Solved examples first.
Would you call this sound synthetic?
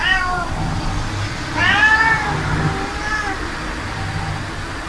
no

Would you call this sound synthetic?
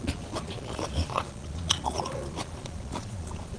yes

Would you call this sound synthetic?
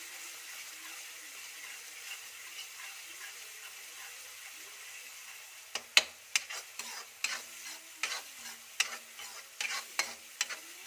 no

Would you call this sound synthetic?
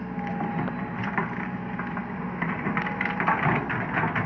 no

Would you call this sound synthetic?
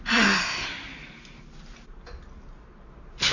no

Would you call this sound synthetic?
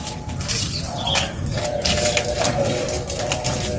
no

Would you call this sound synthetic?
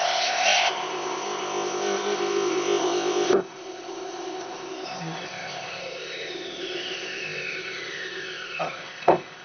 yes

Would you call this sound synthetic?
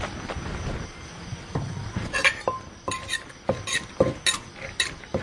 no